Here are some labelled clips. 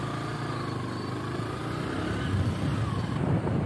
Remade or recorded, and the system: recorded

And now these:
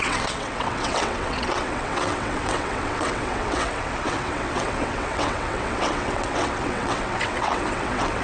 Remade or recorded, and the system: remade, vocoder, WaveNeXt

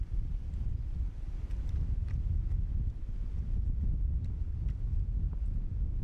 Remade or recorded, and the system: remade, vocoder, BigVGAN v2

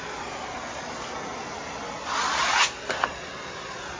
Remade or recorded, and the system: recorded